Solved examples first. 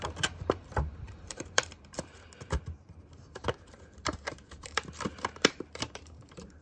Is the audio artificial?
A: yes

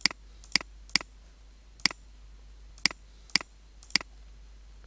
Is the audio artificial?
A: no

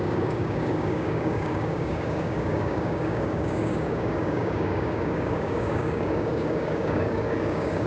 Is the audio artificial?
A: yes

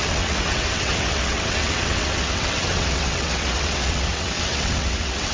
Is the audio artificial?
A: yes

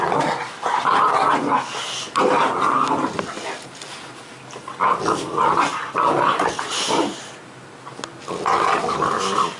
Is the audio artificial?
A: no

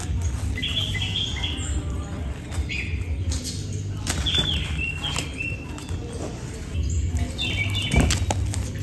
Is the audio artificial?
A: no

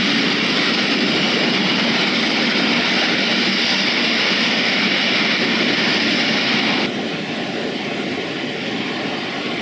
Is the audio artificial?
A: no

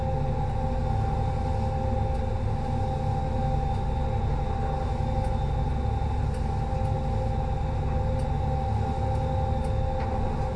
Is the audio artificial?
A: no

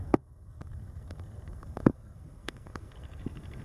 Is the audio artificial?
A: yes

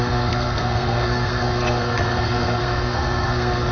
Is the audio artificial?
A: yes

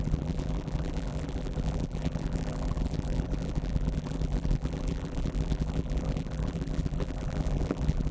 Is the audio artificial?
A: yes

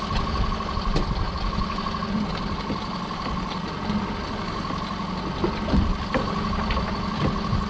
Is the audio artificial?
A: no